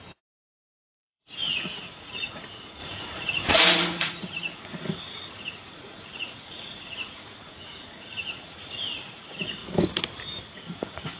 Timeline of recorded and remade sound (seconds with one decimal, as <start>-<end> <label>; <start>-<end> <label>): 0.0-9.6 remade; 9.6-10.5 recorded; 10.5-11.2 remade